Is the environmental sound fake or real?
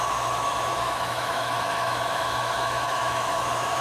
fake